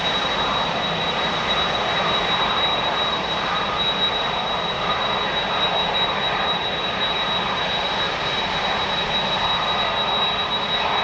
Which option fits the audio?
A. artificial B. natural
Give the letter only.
B